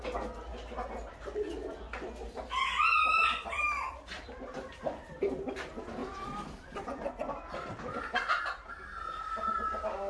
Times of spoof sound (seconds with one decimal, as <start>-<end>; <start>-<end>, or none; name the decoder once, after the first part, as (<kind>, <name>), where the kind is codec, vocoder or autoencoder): 2.9-5.6 (vocoder, BigVGAN v2); 6.0-7.1; 7.7-8.4